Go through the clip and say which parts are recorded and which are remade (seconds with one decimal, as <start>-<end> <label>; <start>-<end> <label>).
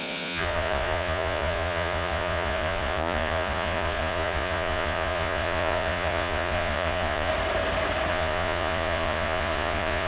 0.0-7.3 remade; 7.3-8.1 recorded; 8.1-10.1 remade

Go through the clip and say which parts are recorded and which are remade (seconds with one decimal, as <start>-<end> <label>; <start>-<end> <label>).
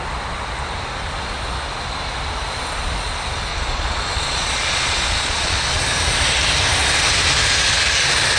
0.0-3.5 recorded; 3.5-5.8 remade; 5.8-8.4 recorded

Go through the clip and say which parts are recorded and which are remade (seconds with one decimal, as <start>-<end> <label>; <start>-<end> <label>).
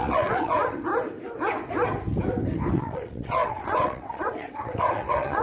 0.0-0.9 remade; 0.9-2.7 recorded; 2.7-5.4 remade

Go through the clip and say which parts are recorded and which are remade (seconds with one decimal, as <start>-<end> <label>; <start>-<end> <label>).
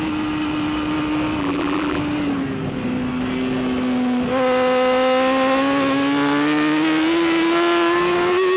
0.0-1.4 recorded; 1.4-2.0 remade; 2.0-8.6 recorded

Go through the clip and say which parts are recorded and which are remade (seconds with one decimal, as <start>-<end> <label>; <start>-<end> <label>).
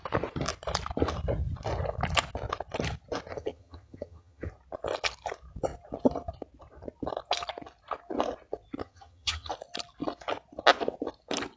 0.0-3.3 recorded; 3.3-4.5 remade; 4.5-8.8 recorded; 8.8-9.5 remade; 9.5-11.6 recorded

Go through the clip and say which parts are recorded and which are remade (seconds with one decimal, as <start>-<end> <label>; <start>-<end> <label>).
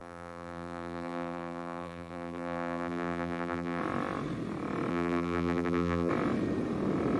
0.0-3.8 remade; 3.8-4.9 recorded; 4.9-6.1 remade; 6.1-7.2 recorded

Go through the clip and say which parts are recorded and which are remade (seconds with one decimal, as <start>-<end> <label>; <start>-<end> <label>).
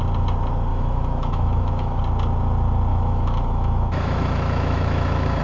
0.0-0.7 recorded; 0.7-2.0 remade; 2.0-2.9 recorded; 2.9-5.4 remade